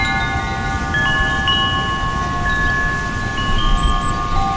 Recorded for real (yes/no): yes